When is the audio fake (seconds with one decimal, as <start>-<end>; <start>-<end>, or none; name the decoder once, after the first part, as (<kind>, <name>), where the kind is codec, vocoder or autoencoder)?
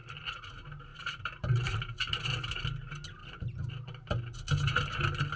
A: 0.0-0.5 (vocoder, BigVGAN v2); 0.9-2.2